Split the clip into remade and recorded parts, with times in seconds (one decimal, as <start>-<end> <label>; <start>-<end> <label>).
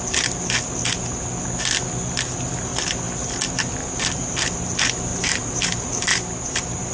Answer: 0.0-3.8 recorded; 3.8-4.3 remade; 4.3-5.1 recorded; 5.1-5.6 remade; 5.6-6.1 recorded; 6.1-6.9 remade